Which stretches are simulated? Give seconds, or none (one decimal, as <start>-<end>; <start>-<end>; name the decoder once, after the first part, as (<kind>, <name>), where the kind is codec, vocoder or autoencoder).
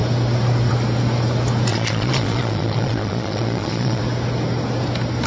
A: 1.7-4.0 (vocoder, Vocos)